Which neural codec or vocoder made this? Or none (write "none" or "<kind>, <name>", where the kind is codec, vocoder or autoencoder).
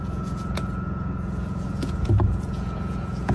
vocoder, Vocos